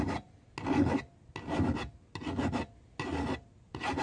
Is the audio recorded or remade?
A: recorded